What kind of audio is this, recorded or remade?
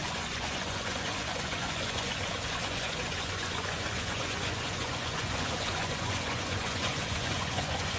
remade